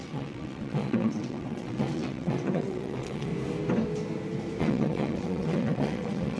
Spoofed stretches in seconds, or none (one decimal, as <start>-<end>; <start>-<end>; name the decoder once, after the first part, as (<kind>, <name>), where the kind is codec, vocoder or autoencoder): 0.0-3.3 (vocoder, WaveNeXt); 4.6-6.4